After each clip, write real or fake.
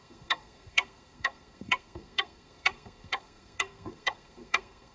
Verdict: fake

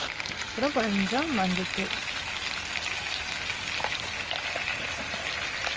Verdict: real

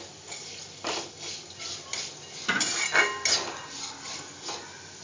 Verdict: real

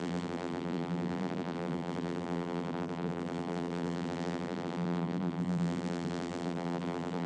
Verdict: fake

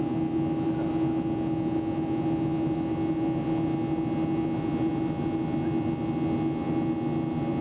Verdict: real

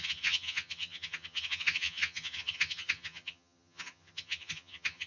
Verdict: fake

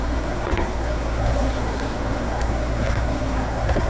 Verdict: fake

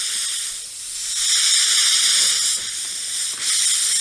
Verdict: real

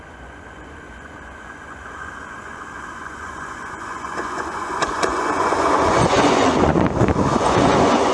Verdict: fake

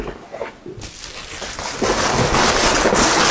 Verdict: real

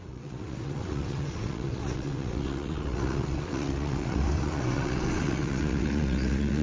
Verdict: fake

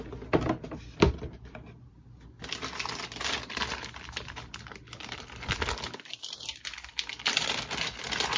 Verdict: real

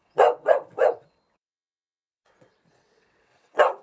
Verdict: fake